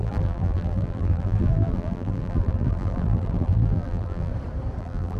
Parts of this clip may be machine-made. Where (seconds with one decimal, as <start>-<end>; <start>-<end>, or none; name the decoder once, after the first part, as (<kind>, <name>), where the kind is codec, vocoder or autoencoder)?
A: 0.0-4.3 (vocoder, BigVGAN v2); 4.8-5.2